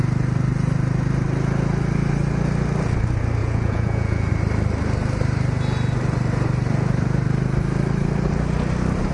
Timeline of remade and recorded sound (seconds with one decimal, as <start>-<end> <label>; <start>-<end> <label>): 0.0-3.4 recorded; 3.4-4.3 remade; 4.3-9.1 recorded